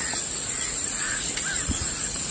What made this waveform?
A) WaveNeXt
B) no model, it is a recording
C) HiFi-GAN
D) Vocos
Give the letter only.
D